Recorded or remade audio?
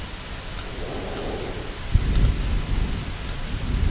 recorded